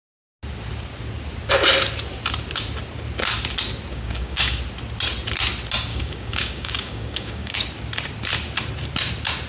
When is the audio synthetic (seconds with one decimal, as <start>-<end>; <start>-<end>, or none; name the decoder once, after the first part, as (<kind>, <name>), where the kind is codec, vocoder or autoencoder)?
3.9-4.6 (codec, DAC); 5.9-7.5